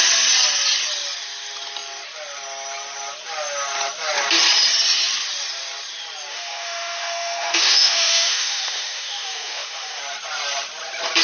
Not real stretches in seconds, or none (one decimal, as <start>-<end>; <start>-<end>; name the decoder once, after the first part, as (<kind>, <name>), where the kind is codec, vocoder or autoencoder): 6.3-10.0 (autoencoder, DAC-VAE)